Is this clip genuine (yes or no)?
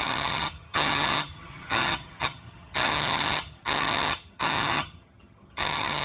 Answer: no